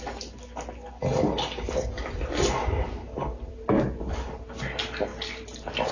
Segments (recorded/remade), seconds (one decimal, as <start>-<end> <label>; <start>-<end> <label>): 0.0-5.1 recorded; 5.1-5.9 remade